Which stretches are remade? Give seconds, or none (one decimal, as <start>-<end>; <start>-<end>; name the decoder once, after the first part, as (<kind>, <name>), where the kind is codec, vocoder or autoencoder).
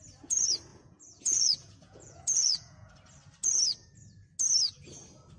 0.7-2.9 (vocoder, Vocos)